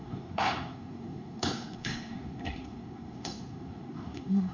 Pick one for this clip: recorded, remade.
remade